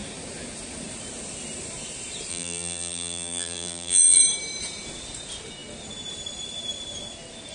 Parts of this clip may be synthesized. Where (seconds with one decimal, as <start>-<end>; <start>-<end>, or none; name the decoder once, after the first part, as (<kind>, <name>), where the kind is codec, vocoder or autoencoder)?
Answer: 2.3-4.2 (vocoder, BigVGAN v2)